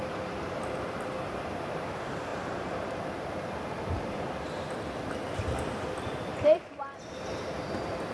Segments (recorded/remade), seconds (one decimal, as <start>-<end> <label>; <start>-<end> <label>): 0.0-2.3 recorded; 2.3-3.0 remade; 3.0-6.3 recorded; 6.3-7.0 remade; 7.0-8.1 recorded